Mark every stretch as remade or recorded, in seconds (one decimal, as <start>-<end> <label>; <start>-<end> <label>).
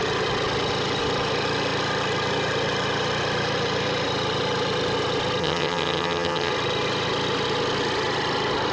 0.0-5.4 recorded; 5.4-6.5 remade; 6.5-8.7 recorded